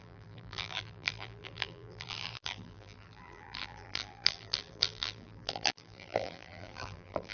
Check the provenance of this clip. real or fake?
fake